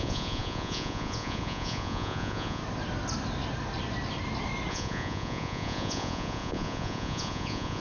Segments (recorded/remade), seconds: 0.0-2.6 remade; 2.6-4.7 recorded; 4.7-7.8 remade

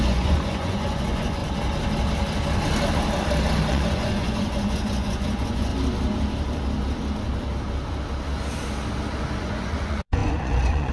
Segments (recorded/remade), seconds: 0.0-1.4 remade; 1.4-3.7 recorded; 3.7-5.7 remade; 5.7-9.4 recorded; 9.4-10.9 remade

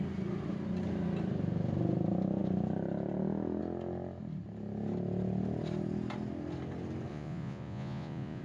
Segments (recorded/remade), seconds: 0.0-7.1 recorded; 7.1-8.4 remade

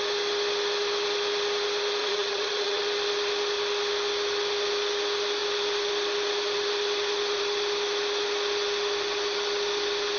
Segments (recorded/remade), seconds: 0.0-2.0 recorded; 2.0-2.8 remade; 2.8-10.2 recorded

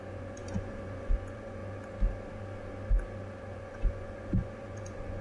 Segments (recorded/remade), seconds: 0.0-1.6 remade; 1.6-3.4 recorded; 3.4-5.2 remade